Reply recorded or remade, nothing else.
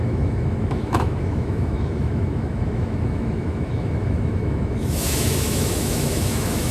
remade